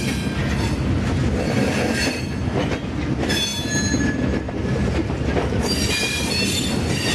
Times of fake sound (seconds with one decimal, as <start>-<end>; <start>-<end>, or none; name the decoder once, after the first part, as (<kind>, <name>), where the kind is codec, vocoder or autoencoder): none